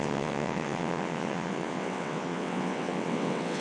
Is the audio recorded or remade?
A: remade